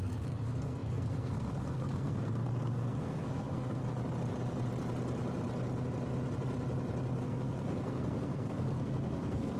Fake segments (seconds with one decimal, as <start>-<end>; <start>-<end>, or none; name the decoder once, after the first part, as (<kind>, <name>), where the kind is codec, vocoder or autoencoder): 0.0-3.8 (codec, SNAC); 7.2-9.6

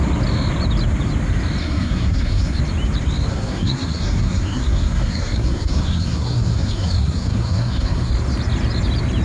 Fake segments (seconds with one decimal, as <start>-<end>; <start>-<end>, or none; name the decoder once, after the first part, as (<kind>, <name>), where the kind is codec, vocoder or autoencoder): 1.6-2.6 (codec, SNAC); 3.3-8.1

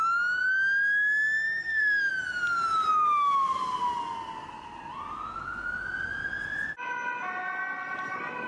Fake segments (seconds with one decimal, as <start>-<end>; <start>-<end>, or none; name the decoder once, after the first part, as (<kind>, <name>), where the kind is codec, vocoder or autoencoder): 1.6-2.1 (codec, SNAC)

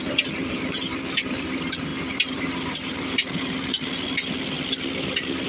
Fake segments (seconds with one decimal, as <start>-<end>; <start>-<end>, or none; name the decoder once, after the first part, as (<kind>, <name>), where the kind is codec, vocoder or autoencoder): none

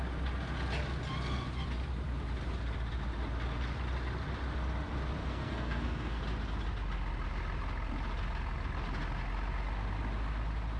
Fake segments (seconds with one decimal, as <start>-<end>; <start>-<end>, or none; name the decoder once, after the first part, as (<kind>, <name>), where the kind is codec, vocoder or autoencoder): 5.2-6.2 (codec, SNAC)

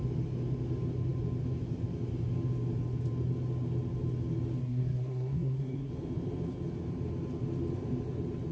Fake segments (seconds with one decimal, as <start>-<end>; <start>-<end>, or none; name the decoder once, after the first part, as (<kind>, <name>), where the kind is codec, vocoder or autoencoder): 4.6-5.9 (codec, SNAC)